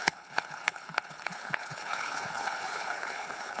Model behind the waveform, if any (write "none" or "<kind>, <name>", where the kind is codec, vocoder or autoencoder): codec, HILCodec